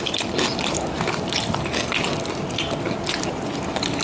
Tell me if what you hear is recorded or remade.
recorded